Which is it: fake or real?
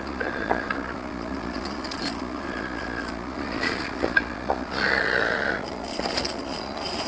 fake